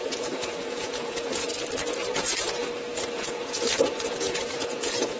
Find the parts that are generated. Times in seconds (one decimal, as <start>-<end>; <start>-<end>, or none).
0.0-1.5; 2.1-2.6; 3.2-5.2